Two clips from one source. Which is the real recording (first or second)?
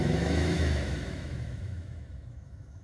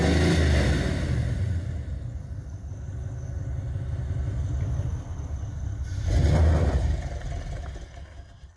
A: second